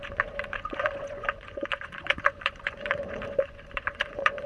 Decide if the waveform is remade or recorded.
remade